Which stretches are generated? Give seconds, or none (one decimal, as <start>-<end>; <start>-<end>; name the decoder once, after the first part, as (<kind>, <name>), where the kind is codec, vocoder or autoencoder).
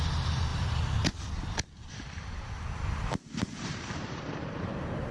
1.8-5.1 (vocoder, BigVGAN v2)